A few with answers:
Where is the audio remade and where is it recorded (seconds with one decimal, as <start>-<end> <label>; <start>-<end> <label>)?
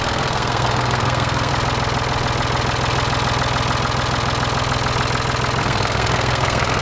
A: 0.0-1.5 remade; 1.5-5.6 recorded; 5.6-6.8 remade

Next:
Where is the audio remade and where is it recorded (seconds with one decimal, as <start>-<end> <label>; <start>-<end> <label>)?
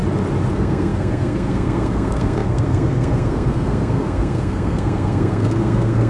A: 0.0-0.5 recorded; 0.5-6.1 remade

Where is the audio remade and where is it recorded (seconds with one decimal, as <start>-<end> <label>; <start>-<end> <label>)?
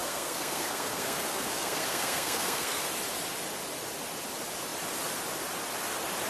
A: 0.0-2.8 remade; 2.8-6.3 recorded